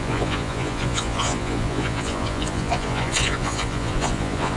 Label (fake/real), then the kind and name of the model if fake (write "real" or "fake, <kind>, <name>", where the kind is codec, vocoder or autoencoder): fake, vocoder, Vocos